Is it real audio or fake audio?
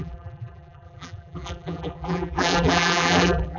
fake